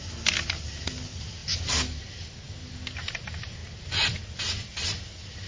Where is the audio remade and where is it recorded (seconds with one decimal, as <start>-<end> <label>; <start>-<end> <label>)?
0.0-5.5 recorded